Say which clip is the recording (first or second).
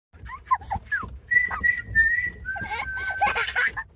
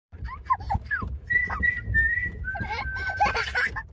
first